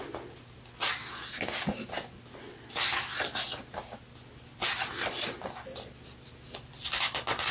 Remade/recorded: recorded